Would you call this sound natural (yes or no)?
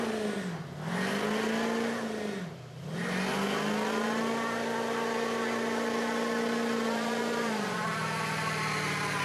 yes